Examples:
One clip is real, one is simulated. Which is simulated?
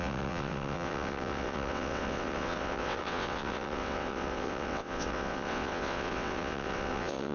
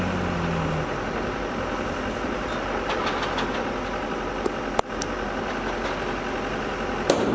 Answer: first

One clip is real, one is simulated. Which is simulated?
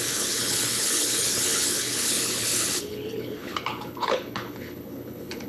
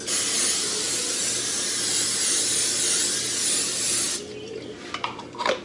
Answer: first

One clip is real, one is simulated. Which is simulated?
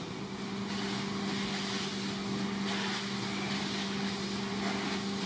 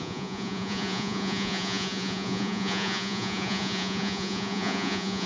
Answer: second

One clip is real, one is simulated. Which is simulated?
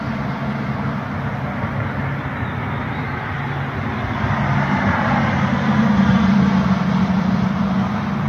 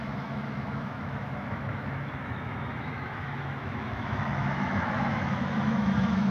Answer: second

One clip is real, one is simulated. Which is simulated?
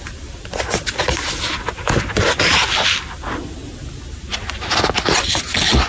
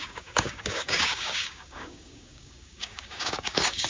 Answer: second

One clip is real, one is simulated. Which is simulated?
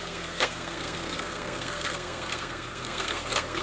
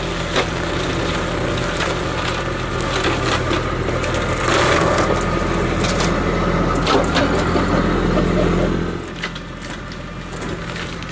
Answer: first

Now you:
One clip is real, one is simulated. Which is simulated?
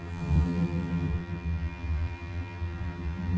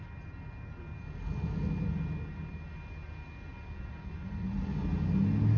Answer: first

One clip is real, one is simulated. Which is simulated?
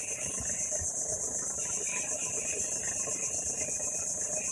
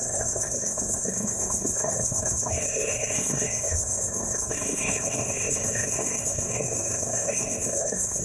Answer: second